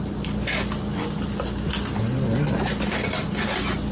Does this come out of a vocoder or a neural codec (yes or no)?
no